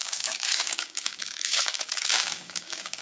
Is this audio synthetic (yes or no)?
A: yes